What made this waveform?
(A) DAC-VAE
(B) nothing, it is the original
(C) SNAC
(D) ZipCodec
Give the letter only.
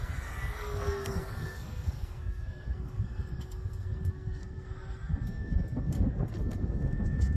C